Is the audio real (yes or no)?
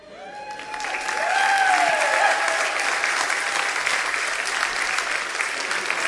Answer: yes